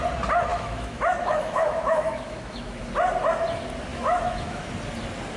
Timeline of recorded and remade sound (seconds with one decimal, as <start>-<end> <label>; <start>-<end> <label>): 0.0-0.5 recorded; 0.5-2.8 remade; 2.8-3.9 recorded; 3.9-4.7 remade; 4.7-5.4 recorded

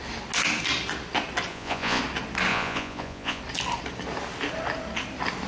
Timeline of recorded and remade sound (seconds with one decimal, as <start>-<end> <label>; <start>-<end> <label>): 0.0-1.5 recorded; 1.5-2.0 remade; 2.0-2.5 recorded; 2.5-3.4 remade; 3.4-5.5 recorded

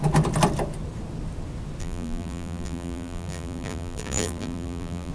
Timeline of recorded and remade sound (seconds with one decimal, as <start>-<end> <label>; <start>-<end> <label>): 0.0-1.8 recorded; 1.8-5.1 remade

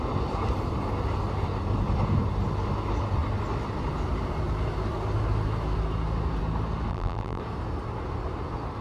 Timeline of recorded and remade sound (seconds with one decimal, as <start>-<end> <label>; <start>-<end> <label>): 0.0-6.9 recorded; 6.9-7.4 remade; 7.4-8.8 recorded